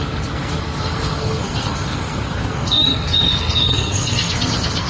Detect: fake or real fake